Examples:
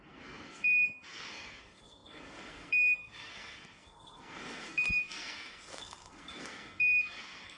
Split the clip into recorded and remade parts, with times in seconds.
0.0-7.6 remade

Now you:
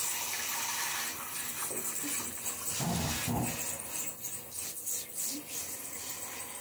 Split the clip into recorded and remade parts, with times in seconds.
0.0-6.6 recorded

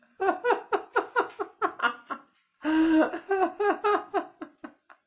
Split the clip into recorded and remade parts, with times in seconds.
0.0-5.1 recorded

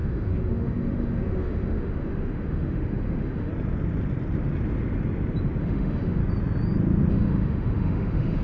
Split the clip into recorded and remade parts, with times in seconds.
0.0-3.5 remade; 3.5-5.6 recorded; 5.6-6.2 remade; 6.2-7.1 recorded; 7.1-8.4 remade

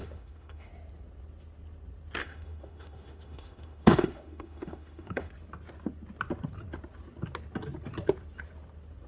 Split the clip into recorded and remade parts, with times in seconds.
0.0-0.7 remade; 0.7-2.2 recorded; 2.2-5.3 remade; 5.3-9.1 recorded

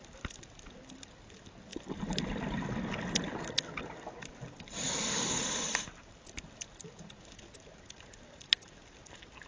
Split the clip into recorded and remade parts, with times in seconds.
0.0-9.5 recorded

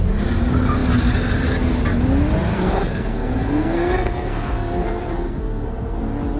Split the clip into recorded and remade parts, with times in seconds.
0.0-2.5 recorded; 2.5-6.0 remade; 6.0-6.4 recorded

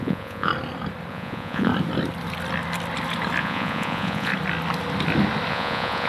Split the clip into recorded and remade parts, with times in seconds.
0.0-0.5 remade; 0.5-1.1 recorded; 1.1-1.7 remade; 1.7-3.4 recorded; 3.4-4.3 remade; 4.3-5.5 recorded; 5.5-6.1 remade